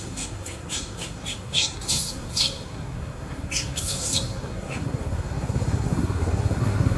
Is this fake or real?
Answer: fake